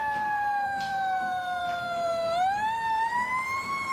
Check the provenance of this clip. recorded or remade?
remade